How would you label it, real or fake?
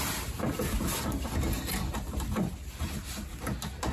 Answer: real